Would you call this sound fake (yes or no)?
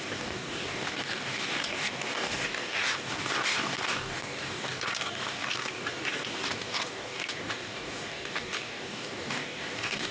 yes